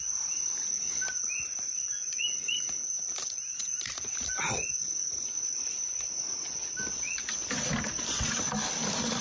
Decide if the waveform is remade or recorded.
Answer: recorded